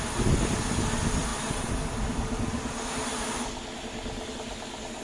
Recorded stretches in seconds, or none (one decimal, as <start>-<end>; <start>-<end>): 0.0-5.0